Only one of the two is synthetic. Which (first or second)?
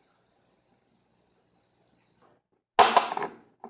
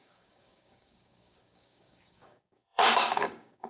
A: second